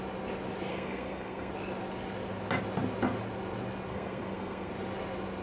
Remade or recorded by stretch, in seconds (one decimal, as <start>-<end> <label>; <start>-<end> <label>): 0.0-0.7 recorded; 0.7-1.5 remade; 1.5-3.9 recorded; 3.9-4.7 remade; 4.7-5.4 recorded